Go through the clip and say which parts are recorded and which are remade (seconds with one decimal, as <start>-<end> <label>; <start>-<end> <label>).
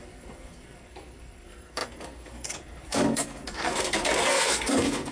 0.0-5.1 remade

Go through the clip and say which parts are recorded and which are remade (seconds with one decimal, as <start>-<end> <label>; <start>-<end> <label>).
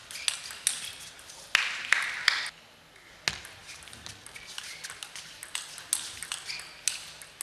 0.0-7.4 recorded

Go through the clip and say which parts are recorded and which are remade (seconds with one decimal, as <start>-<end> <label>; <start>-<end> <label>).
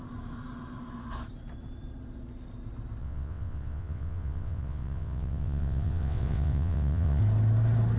0.0-3.0 recorded; 3.0-7.2 remade; 7.2-8.0 recorded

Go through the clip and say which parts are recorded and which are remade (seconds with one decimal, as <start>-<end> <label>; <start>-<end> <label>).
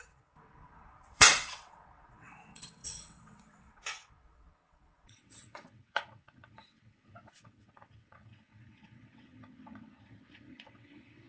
0.0-11.3 remade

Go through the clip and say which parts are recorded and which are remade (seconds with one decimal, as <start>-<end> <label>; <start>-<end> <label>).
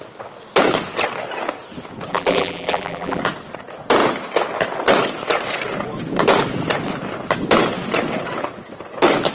0.0-2.1 recorded; 2.1-3.2 remade; 3.2-9.3 recorded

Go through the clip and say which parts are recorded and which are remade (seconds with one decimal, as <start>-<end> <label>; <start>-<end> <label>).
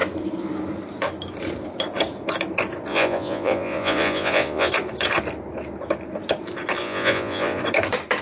0.0-2.9 recorded; 2.9-4.7 remade; 4.7-6.8 recorded; 6.8-7.6 remade; 7.6-8.2 recorded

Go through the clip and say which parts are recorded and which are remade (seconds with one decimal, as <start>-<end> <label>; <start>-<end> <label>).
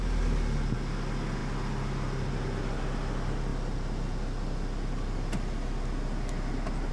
0.0-6.9 recorded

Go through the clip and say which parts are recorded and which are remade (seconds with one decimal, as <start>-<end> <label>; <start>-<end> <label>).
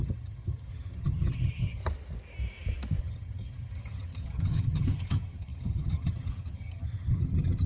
0.0-1.8 remade; 1.8-3.0 recorded; 3.0-7.7 remade